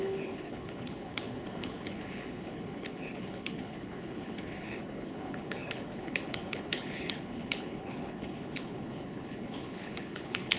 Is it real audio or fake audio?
fake